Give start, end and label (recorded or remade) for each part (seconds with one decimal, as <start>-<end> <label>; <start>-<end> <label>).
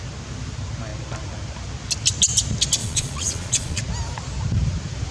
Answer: 0.0-2.8 recorded; 2.8-3.8 remade; 3.8-5.1 recorded